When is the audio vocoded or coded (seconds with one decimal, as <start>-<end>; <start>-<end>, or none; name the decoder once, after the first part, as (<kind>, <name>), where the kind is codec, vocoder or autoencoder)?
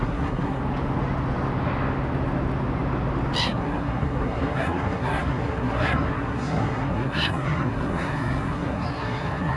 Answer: 0.0-0.6 (codec, SNAC); 3.4-9.6